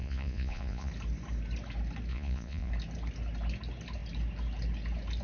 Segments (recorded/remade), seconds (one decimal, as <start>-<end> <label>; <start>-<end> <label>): 0.0-0.9 remade; 0.9-2.1 recorded; 2.1-2.7 remade; 2.7-5.2 recorded